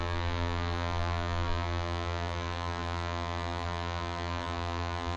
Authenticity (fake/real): fake